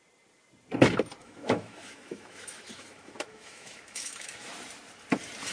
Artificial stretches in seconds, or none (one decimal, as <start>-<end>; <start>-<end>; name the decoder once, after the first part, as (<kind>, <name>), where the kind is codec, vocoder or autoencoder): 1.2-4.5 (autoencoder, DAC-VAE)